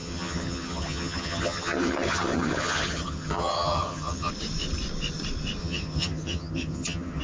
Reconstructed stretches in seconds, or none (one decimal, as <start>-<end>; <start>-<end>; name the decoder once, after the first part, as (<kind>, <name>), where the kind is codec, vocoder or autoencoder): 0.0-4.3 (vocoder, HiFi-GAN); 5.6-7.2